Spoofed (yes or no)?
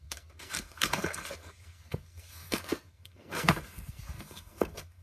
yes